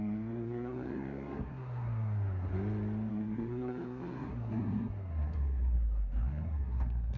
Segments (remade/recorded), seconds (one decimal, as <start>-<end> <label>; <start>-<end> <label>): 0.0-2.5 remade; 2.5-3.1 recorded; 3.1-7.2 remade